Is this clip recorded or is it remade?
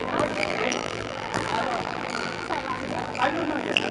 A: remade